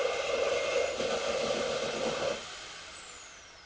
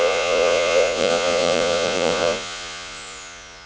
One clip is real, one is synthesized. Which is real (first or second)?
first